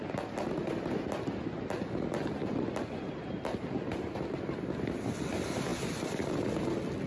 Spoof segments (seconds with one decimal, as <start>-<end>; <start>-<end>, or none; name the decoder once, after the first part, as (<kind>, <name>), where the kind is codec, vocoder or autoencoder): none